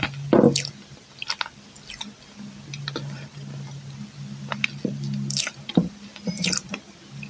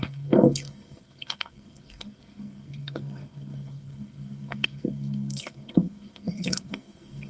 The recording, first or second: first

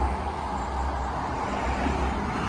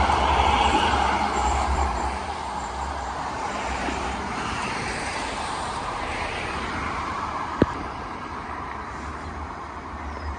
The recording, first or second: first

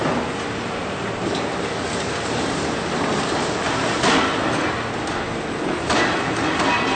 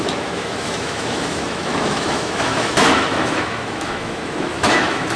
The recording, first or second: first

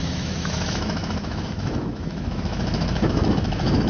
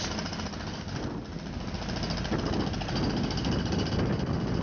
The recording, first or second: second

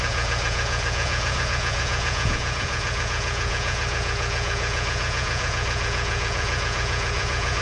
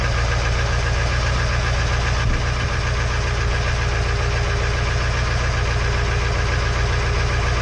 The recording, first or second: second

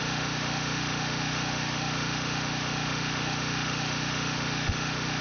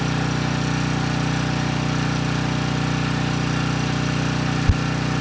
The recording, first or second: second